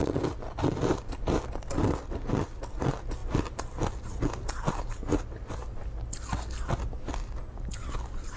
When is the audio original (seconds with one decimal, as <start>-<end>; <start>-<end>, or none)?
0.0-8.4